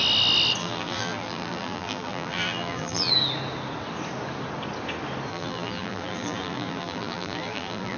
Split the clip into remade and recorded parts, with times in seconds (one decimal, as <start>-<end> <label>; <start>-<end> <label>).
0.0-0.6 recorded; 0.6-3.1 remade; 3.1-5.3 recorded; 5.3-8.0 remade